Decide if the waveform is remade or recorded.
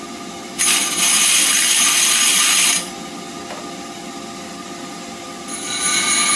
recorded